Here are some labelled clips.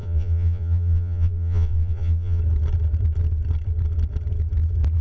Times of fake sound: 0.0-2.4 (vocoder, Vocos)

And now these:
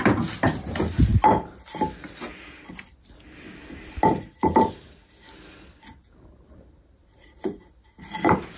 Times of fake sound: none

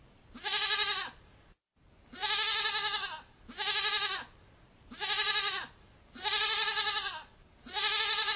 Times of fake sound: 0.0-1.7 (vocoder, BigVGAN v2); 4.8-8.4

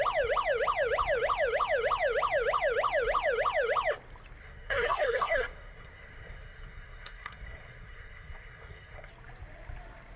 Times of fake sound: 4.4-9.1 (codec, SNAC)

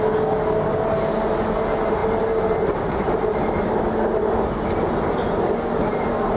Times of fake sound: none

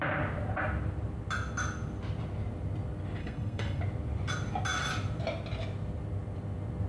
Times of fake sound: 3.2-3.8 (codec, SNAC)

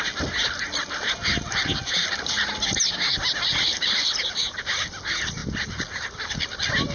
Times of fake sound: none

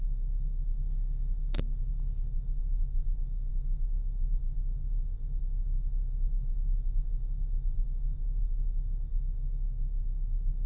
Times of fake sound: 9.1-10.7 (autoencoder, DAC-VAE)